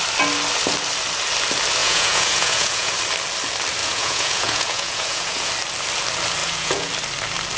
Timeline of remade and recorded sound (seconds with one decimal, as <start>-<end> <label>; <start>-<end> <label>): 0.0-1.8 recorded; 1.8-2.9 remade; 2.9-3.8 recorded; 3.8-5.5 remade; 5.5-6.4 recorded; 6.4-6.9 remade; 6.9-7.6 recorded